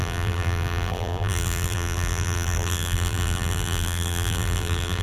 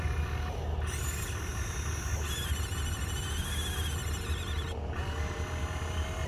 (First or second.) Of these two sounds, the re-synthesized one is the first